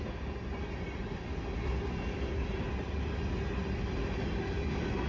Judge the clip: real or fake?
real